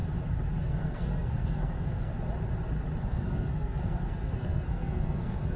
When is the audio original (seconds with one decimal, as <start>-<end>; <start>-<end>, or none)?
0.0-0.6; 2.1-3.0